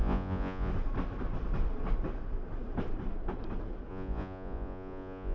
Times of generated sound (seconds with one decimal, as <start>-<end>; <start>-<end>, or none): 0.0-0.7; 3.9-5.3